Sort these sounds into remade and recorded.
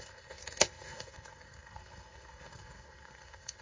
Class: remade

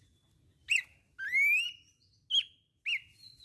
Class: recorded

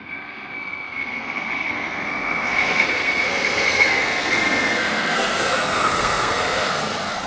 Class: remade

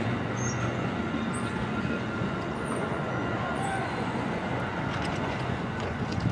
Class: remade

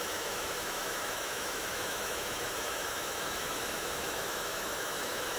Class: remade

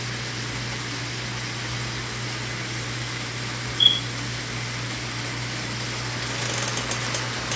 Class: recorded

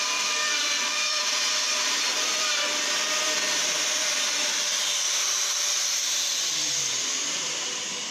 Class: remade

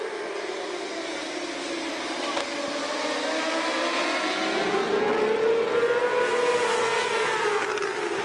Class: recorded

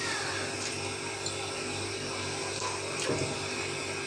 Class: recorded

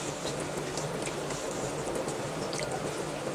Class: remade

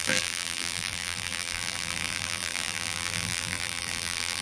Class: remade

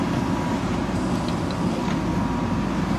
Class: recorded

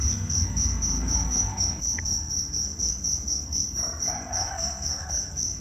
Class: remade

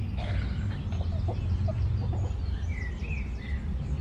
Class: recorded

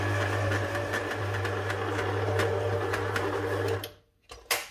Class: recorded